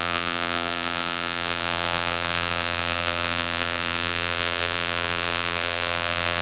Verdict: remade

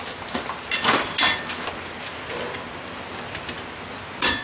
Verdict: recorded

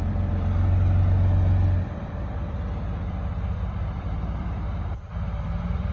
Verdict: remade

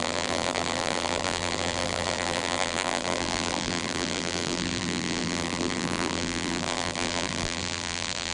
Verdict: remade